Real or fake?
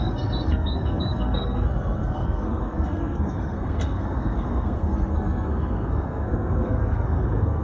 fake